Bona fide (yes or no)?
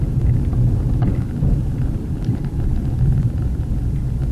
yes